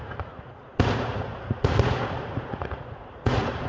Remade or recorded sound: remade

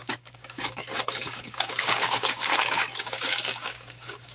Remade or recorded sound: remade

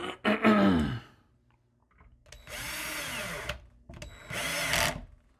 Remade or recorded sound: recorded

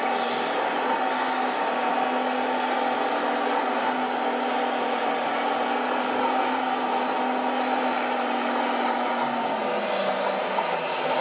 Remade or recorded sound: recorded